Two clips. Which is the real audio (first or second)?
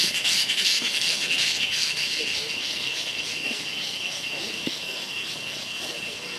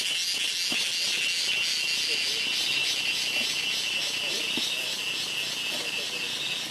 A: second